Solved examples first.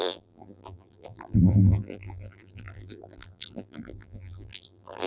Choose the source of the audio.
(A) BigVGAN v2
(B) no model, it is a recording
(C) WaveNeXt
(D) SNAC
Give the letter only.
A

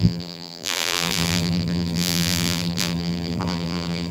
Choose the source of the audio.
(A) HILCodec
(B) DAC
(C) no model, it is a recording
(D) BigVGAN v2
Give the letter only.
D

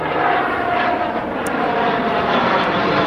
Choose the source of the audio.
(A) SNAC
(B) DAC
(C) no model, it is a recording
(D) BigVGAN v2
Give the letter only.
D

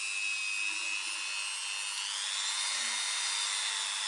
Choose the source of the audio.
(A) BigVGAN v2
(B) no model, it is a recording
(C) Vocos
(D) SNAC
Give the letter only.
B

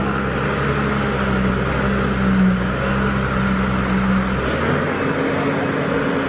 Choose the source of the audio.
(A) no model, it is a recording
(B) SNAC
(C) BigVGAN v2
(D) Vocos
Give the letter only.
A